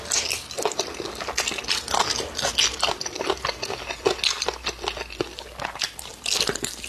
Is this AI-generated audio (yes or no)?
no